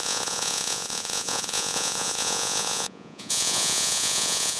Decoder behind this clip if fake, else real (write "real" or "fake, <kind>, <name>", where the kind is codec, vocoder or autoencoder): fake, vocoder, Vocos